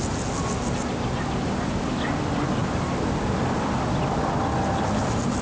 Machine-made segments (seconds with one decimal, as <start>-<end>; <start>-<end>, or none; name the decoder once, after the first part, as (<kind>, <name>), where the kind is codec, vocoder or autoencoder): none